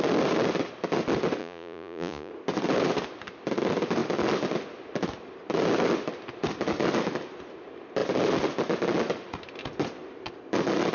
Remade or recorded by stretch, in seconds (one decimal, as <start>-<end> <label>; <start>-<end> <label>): 0.0-1.4 recorded; 1.4-2.3 remade; 2.3-10.9 recorded